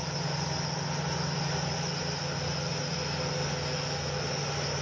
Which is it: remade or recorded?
recorded